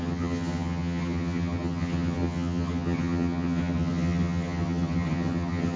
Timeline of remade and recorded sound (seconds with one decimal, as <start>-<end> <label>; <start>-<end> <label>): 0.0-5.8 remade